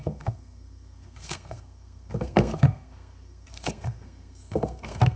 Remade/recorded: remade